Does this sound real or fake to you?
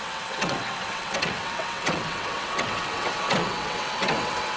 fake